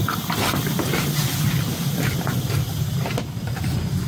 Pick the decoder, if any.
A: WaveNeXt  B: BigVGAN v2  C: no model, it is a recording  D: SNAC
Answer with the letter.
C